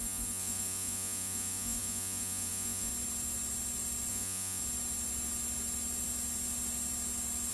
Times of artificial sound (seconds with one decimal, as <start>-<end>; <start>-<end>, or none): 0.0-2.9; 4.1-4.6